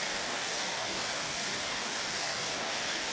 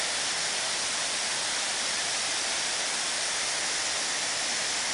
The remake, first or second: first